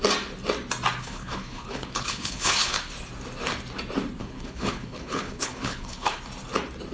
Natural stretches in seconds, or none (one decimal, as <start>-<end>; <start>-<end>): 0.0-1.0; 2.8-4.2; 6.2-6.9